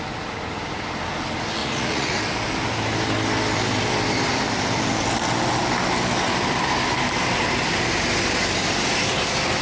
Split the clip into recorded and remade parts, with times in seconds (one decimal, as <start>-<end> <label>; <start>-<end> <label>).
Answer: 0.0-1.6 recorded; 1.6-2.2 remade; 2.2-9.6 recorded